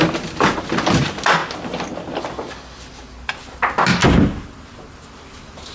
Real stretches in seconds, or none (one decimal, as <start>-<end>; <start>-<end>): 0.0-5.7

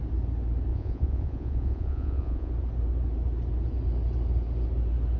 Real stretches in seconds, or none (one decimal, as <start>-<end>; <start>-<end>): 0.0-0.7; 2.5-5.2

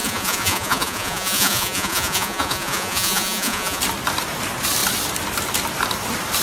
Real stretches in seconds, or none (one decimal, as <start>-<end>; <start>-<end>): 3.8-6.4

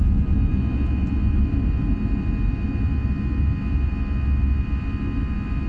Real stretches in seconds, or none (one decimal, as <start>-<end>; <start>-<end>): 0.0-5.7

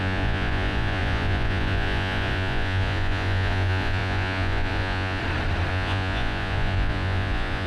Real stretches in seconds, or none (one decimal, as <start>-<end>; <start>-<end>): 5.2-5.7